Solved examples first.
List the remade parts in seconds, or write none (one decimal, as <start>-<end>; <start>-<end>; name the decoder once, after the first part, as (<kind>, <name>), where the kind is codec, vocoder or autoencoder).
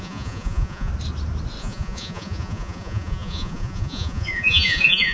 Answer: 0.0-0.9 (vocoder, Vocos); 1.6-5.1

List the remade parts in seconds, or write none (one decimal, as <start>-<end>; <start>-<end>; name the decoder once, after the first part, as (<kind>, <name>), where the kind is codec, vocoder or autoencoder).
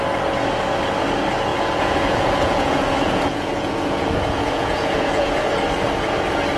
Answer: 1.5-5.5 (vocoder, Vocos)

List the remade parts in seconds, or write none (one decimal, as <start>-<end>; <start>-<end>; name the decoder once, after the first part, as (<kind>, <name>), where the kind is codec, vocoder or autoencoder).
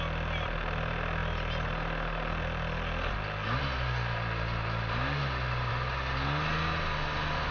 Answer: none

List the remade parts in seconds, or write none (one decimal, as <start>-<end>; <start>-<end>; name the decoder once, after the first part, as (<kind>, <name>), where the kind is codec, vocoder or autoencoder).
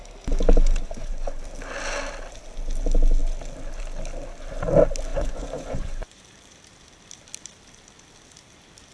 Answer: 0.8-1.4 (vocoder, Vocos); 5.1-6.2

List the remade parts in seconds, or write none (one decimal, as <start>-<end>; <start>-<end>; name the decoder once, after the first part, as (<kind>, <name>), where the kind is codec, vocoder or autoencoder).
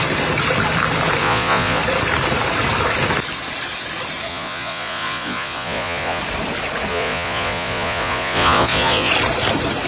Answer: 1.2-1.8 (vocoder, Vocos); 4.3-6.2; 6.9-9.1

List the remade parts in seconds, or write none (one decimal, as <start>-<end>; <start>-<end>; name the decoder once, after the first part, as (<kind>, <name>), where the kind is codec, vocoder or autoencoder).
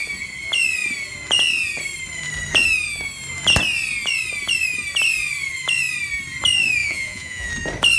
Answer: 6.8-7.5 (vocoder, Vocos)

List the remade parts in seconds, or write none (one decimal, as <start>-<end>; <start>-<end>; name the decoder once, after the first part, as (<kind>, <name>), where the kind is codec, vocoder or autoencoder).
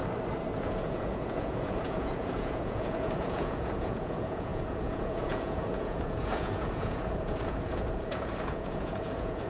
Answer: 0.6-9.5 (vocoder, Vocos)